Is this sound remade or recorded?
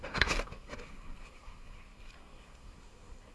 remade